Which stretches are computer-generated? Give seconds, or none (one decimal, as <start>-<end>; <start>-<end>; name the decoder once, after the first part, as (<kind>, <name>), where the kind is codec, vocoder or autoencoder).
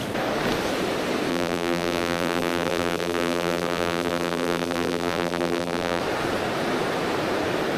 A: 1.3-6.0 (vocoder, BigVGAN v2)